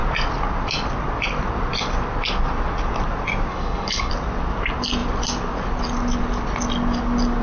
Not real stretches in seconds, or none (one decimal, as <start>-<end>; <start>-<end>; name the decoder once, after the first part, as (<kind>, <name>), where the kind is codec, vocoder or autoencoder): 3.5-4.1 (codec, HILCodec)